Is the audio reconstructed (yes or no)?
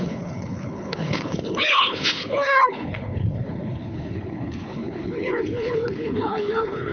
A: yes